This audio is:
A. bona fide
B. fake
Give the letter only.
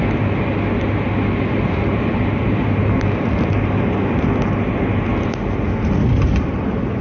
A